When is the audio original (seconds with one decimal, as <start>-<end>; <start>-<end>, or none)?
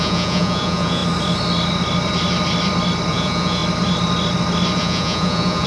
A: 1.0-3.1; 3.6-4.8